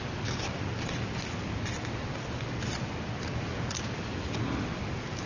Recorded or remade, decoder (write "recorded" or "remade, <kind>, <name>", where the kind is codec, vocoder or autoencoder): recorded